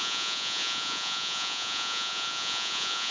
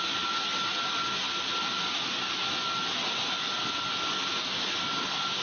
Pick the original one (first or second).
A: second